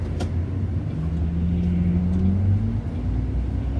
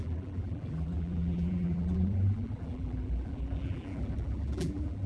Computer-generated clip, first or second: second